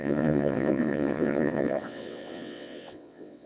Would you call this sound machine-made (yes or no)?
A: yes